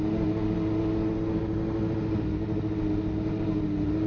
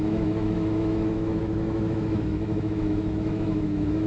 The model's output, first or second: second